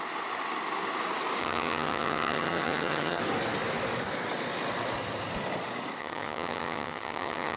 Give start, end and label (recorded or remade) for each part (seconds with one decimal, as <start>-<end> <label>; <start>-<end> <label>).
0.0-1.4 recorded; 1.4-3.2 remade; 3.2-6.0 recorded; 6.0-7.6 remade

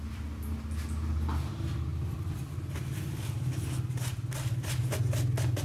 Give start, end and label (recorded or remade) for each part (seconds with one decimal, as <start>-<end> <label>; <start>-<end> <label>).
0.0-1.9 recorded; 1.9-2.7 remade; 2.7-5.6 recorded

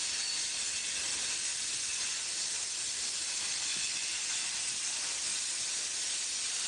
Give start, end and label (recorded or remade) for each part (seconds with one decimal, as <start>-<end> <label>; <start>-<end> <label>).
0.0-1.5 recorded; 1.5-2.3 remade; 2.3-3.7 recorded; 3.7-4.5 remade; 4.5-6.7 recorded

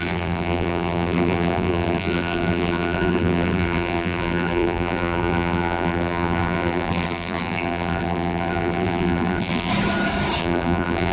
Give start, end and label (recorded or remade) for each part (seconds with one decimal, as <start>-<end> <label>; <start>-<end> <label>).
0.0-9.7 remade; 9.7-10.4 recorded; 10.4-11.1 remade

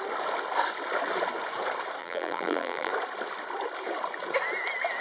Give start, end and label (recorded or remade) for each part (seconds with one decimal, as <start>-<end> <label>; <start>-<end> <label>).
0.0-2.0 recorded; 2.0-2.9 remade; 2.9-5.0 recorded

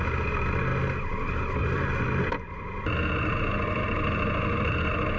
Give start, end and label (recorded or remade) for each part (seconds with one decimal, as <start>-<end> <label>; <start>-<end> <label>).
0.0-5.2 recorded

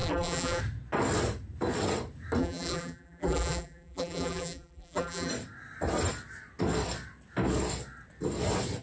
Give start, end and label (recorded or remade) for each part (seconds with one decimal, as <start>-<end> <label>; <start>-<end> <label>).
0.0-0.6 remade; 0.6-2.4 recorded; 2.4-5.3 remade; 5.3-8.8 recorded